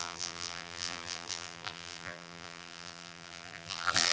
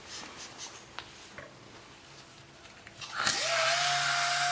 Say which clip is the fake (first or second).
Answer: first